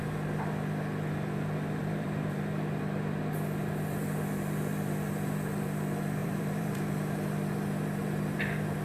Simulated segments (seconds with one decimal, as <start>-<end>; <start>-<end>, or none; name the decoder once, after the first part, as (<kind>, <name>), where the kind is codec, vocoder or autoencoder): 1.8-2.4 (vocoder, BigVGAN v2); 6.2-6.9